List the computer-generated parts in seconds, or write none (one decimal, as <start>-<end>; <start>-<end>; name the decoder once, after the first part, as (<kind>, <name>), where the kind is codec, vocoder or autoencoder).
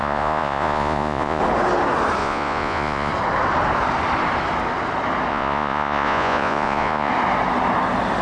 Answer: 0.0-1.4 (vocoder, Vocos); 2.2-3.1; 5.3-7.1